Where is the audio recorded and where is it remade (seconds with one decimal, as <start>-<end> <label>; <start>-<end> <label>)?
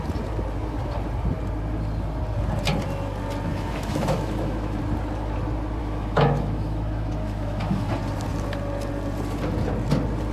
0.0-3.5 recorded; 3.5-4.8 remade; 4.8-5.8 recorded; 5.8-7.9 remade; 7.9-10.3 recorded